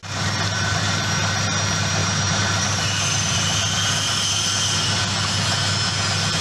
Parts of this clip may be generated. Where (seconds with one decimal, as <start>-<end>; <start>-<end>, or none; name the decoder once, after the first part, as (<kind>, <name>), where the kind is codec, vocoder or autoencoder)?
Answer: 2.0-2.6 (vocoder, BigVGAN v2)